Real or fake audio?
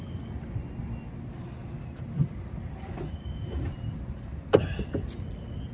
real